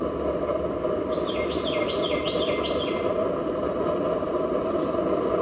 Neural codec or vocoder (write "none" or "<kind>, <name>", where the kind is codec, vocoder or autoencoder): none